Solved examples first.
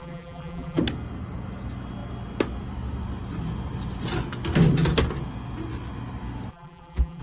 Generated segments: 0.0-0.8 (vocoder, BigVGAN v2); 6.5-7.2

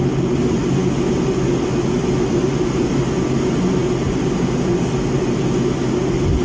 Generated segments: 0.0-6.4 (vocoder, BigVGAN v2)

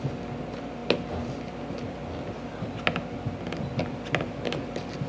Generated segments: none

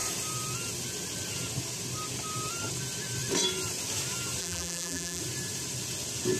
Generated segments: 4.4-5.2 (vocoder, BigVGAN v2)